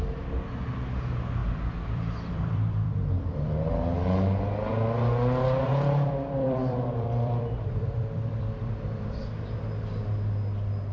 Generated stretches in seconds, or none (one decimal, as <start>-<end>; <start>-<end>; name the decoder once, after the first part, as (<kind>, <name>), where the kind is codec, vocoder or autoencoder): 1.4-3.7 (vocoder, BigVGAN v2); 5.6-9.2